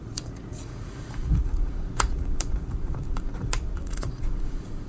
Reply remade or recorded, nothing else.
remade